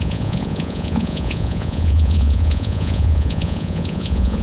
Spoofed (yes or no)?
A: yes